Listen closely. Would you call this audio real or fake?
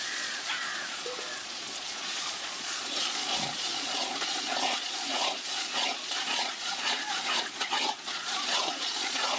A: fake